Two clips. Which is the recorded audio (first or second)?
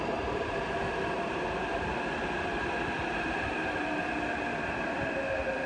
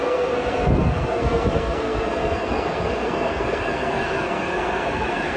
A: first